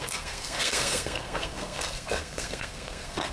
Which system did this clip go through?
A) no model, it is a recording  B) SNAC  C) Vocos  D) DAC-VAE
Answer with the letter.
B